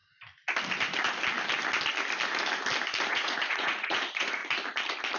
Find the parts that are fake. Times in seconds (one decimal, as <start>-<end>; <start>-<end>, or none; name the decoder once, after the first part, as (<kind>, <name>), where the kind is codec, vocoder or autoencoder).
3.1-4.4 (vocoder, Vocos)